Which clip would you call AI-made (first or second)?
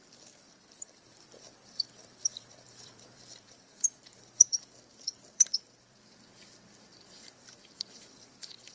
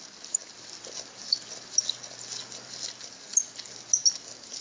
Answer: first